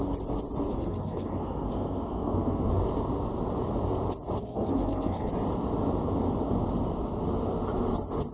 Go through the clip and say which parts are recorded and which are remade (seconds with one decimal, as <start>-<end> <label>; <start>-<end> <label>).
0.0-0.7 recorded; 0.7-2.7 remade; 2.7-4.4 recorded; 4.4-5.3 remade; 5.3-8.3 recorded